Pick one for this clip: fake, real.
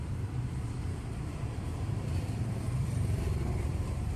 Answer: fake